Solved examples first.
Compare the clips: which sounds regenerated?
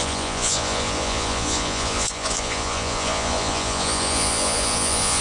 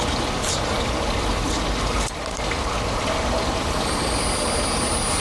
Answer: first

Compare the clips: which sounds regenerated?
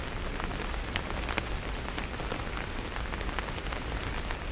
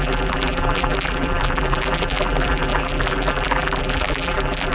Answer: second